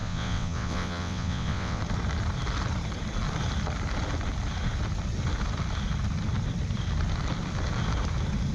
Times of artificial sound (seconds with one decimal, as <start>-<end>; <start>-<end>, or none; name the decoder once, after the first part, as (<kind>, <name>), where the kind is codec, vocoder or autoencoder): 0.0-1.8 (vocoder, WaveNeXt)